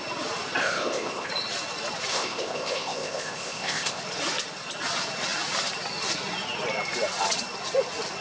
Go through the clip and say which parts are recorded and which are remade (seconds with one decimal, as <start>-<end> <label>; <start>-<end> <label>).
0.0-0.6 recorded; 0.6-1.3 remade; 1.3-2.1 recorded; 2.1-4.0 remade; 4.0-8.2 recorded